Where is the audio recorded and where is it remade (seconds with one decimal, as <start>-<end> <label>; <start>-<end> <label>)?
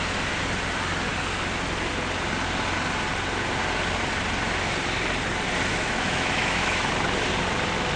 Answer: 0.0-5.7 recorded; 5.7-6.9 remade; 6.9-8.0 recorded